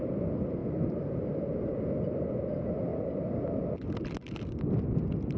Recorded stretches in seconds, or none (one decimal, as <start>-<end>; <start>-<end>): 0.0-0.6; 2.2-5.4